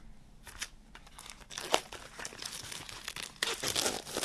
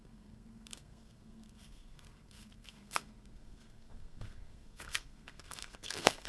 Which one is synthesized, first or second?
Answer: second